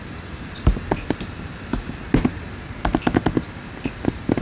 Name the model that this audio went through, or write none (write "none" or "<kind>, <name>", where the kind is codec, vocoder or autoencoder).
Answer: none